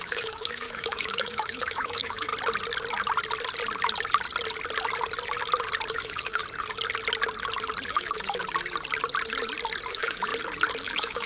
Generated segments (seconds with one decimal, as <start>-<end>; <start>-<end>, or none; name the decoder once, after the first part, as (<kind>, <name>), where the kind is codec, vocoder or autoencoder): 0.0-2.3 (autoencoder, DAC-VAE); 5.9-6.4; 7.9-8.4; 9.9-10.3; 10.8-11.3

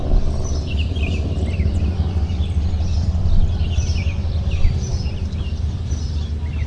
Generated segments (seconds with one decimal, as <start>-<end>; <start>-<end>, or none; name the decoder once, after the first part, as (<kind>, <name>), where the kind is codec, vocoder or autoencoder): 4.9-5.8 (vocoder, BigVGAN v2)

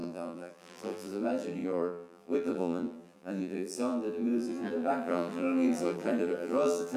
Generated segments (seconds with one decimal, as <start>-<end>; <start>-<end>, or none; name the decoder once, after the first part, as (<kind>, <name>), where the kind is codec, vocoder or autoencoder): 0.0-7.0 (vocoder, BigVGAN v2)

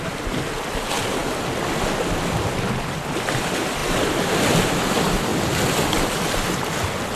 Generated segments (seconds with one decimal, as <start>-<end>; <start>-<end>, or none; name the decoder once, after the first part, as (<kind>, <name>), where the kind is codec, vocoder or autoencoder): none

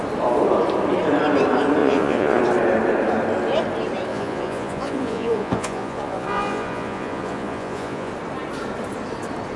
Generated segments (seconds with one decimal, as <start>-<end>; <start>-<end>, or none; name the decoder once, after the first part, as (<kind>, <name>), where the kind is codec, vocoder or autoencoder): 1.8-2.4 (vocoder, Vocos); 4.1-8.1

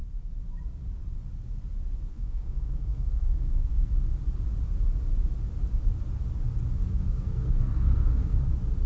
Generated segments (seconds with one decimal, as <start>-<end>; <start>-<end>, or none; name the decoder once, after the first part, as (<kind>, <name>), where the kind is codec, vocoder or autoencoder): 2.1-3.9 (codec, SNAC); 6.8-8.5

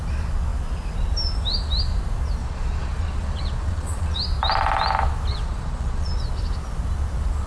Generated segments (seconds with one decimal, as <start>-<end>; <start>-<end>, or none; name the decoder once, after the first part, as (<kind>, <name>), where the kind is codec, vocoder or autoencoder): 2.4-4.2 (vocoder, Vocos); 5.3-6.2